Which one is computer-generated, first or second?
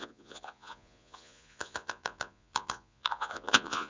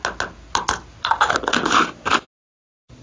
first